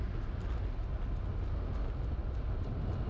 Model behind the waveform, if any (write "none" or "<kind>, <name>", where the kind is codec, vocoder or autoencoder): none